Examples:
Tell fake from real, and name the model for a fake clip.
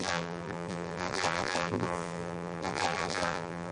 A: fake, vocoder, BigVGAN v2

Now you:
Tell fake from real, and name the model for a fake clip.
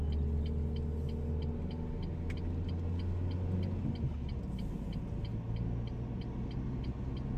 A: real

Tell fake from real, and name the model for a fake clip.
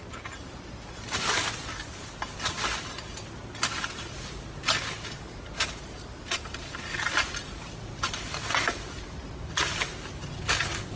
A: real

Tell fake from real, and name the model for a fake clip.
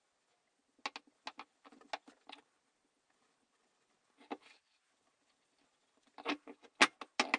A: real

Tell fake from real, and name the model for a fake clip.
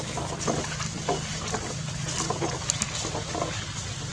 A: real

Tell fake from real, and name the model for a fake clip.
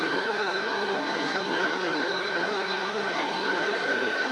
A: fake, codec, SNAC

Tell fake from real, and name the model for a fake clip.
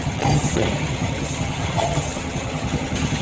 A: fake, vocoder, HiFi-GAN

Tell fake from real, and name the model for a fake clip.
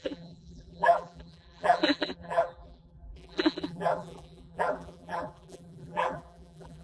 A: fake, vocoder, BigVGAN v2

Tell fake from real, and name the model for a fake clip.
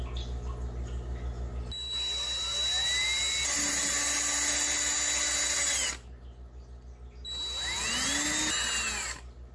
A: real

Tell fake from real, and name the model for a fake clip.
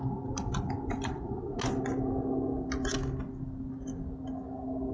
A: real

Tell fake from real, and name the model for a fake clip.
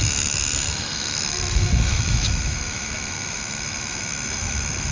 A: fake, autoencoder, DAC-VAE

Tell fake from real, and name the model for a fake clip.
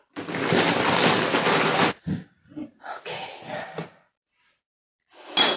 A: real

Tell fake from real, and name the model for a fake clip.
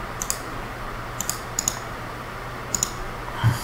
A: real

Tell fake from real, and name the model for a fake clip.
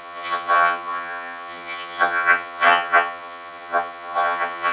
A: fake, vocoder, HiFi-GAN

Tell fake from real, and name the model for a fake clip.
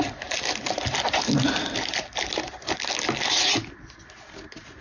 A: real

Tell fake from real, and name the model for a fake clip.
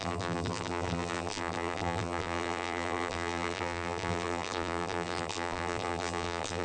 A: fake, vocoder, BigVGAN v2